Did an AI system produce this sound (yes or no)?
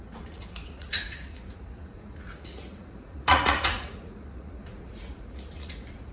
yes